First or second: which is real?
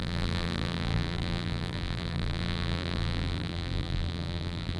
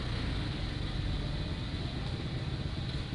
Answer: second